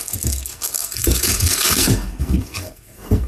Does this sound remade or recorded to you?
remade